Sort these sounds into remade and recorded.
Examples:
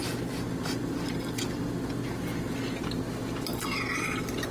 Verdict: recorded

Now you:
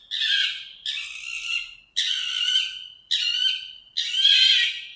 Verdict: recorded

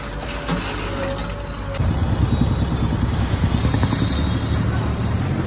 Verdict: recorded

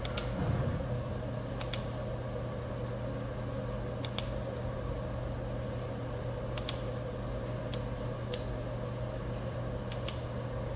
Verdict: recorded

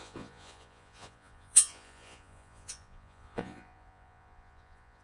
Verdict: remade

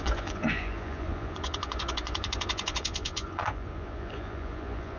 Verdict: remade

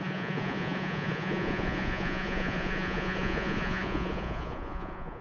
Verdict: remade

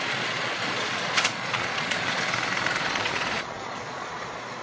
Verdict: remade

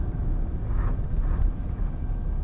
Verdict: recorded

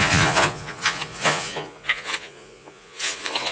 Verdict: remade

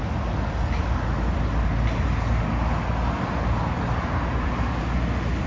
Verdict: recorded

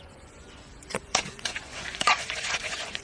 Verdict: remade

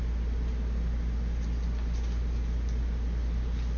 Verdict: recorded